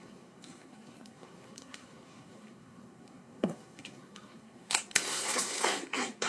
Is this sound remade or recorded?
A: remade